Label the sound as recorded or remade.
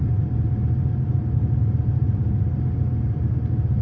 remade